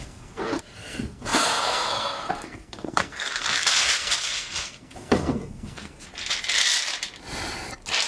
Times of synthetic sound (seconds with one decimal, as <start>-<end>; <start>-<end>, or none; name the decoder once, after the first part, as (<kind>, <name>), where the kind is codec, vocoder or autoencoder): 0.0-6.1 (codec, SNAC)